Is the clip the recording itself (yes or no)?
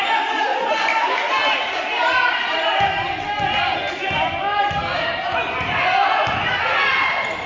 yes